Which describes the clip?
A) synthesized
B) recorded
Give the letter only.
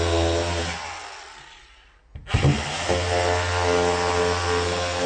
B